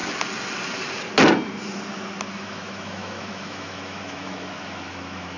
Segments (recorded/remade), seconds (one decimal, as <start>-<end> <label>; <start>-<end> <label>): 0.0-2.3 recorded; 2.3-5.4 remade